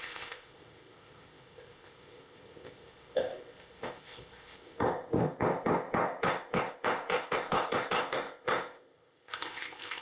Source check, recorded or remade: remade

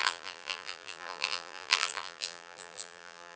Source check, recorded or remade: remade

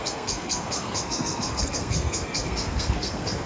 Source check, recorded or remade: remade